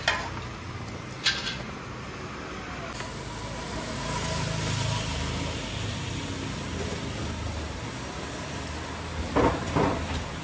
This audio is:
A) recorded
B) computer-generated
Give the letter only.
A